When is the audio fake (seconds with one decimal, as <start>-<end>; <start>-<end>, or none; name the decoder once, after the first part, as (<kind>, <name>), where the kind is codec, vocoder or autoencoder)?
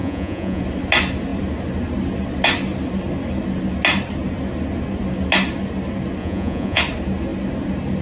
0.0-0.6 (vocoder, Vocos); 6.2-6.8